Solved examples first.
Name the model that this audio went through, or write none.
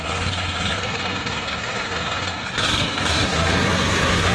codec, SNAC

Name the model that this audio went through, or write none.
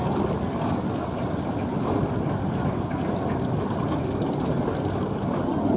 none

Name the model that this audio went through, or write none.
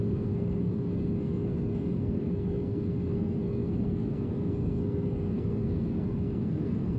codec, SNAC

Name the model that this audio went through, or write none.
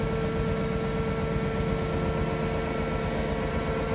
none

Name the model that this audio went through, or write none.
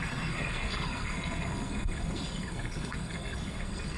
codec, SNAC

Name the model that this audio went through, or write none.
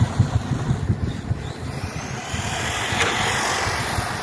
none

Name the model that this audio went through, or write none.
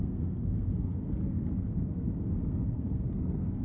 codec, SNAC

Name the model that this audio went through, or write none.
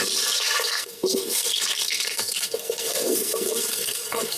codec, SNAC